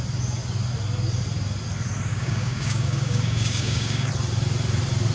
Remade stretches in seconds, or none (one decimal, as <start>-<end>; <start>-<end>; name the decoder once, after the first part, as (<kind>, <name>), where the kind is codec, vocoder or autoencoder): 2.1-4.1 (codec, DAC)

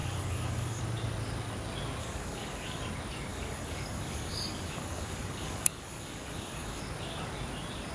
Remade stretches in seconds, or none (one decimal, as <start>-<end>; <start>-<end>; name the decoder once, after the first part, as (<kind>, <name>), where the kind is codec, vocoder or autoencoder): 0.0-0.8 (codec, DAC); 2.0-2.8; 3.3-6.8

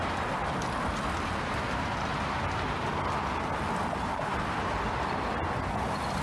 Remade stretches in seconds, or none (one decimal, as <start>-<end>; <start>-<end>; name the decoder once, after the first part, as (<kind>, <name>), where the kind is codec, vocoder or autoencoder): none

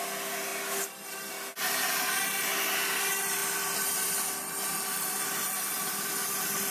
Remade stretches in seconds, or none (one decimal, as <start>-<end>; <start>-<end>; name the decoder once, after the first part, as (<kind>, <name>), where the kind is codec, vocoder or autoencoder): none

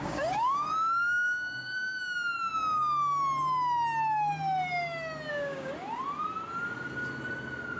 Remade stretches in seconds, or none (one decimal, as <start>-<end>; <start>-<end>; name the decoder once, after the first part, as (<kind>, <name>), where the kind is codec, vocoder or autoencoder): 0.0-1.8 (codec, DAC); 5.3-5.7

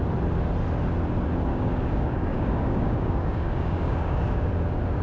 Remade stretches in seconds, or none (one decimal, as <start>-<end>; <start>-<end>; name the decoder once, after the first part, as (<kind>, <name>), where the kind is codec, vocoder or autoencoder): 1.5-4.5 (codec, DAC)

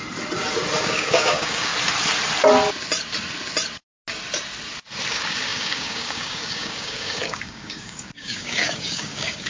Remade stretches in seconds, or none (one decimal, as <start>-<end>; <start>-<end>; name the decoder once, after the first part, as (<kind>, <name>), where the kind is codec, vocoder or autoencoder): 0.8-1.7 (codec, DAC); 5.1-9.5